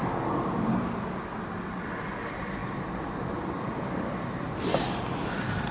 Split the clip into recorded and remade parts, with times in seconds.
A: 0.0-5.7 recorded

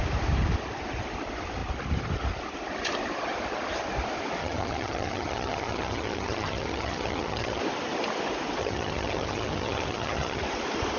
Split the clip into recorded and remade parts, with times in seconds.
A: 0.0-4.4 recorded; 4.4-7.6 remade; 7.6-8.6 recorded; 8.6-10.4 remade; 10.4-11.0 recorded